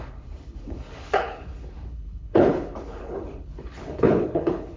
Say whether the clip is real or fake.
fake